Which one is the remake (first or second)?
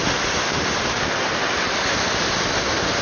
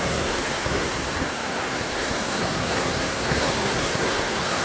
second